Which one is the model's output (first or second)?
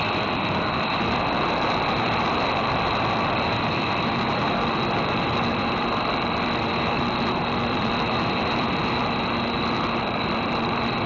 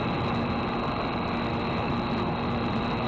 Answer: first